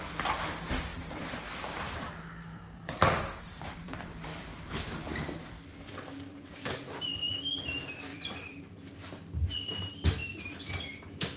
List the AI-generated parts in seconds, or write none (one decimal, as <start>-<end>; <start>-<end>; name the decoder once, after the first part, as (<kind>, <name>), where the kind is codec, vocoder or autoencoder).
0.9-5.6 (vocoder, BigVGAN v2); 6.3-7.0; 8.1-9.1; 10.2-11.0